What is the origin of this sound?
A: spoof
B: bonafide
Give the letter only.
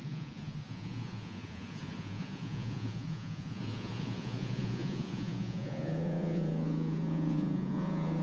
A